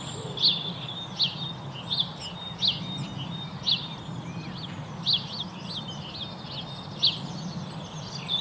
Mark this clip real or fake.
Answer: real